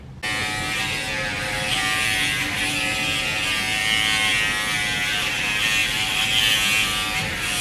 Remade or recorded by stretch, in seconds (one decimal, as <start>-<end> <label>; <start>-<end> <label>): 0.0-0.4 recorded; 0.4-3.8 remade; 3.8-5.8 recorded; 5.8-6.3 remade; 6.3-7.6 recorded